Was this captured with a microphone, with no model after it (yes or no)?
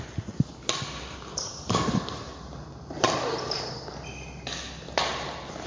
yes